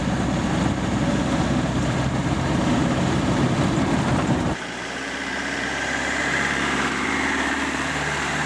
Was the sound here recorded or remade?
remade